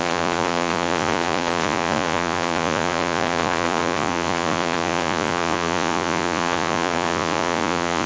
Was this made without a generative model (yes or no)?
no